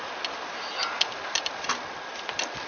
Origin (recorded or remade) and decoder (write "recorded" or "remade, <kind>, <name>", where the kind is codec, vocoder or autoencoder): recorded